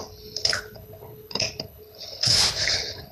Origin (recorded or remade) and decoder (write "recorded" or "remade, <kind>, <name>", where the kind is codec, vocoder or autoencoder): remade, codec, HILCodec